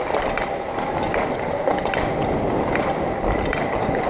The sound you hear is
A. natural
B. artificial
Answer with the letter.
A